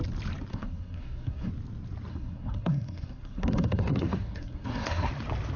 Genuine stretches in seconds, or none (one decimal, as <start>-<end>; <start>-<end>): 0.0-0.5; 1.5-2.1; 5.1-5.6